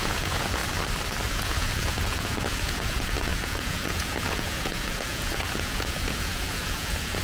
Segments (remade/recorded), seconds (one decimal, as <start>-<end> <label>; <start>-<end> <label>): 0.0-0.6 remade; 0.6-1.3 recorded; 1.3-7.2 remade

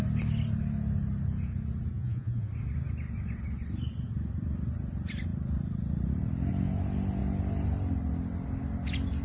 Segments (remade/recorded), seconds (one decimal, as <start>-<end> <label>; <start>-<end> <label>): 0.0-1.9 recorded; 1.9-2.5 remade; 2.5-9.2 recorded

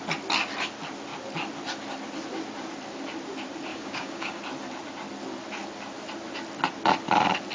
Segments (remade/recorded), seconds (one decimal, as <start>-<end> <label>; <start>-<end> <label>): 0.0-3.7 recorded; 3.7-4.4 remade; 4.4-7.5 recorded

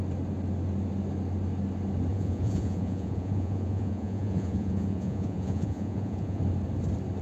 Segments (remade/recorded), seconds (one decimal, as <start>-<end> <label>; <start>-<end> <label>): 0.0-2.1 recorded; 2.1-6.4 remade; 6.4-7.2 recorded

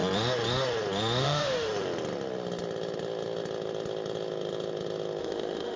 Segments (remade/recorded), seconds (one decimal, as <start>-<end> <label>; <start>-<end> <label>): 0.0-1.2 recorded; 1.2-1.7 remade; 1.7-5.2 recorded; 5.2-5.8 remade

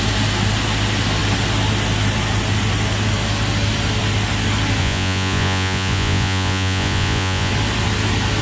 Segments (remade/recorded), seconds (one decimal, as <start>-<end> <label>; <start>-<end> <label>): 0.0-4.8 recorded; 4.8-7.5 remade; 7.5-8.4 recorded

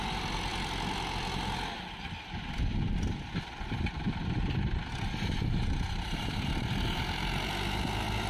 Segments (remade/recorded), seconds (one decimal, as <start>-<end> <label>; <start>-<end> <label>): 0.0-8.3 recorded

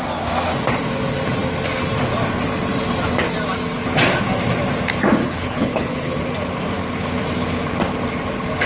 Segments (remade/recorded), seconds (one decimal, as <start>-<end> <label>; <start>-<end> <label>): 0.0-5.2 recorded; 5.2-6.2 remade; 6.2-8.7 recorded